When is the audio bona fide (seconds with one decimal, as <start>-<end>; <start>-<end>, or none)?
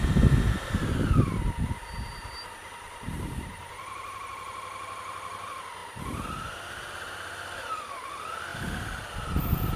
0.0-3.5; 4.5-9.8